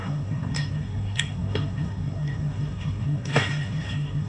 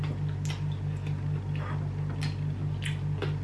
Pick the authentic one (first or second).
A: second